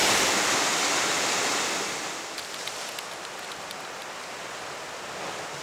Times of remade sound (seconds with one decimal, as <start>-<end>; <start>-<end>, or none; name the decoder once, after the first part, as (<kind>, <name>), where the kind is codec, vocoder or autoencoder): 0.0-3.0 (vocoder, BigVGAN v2)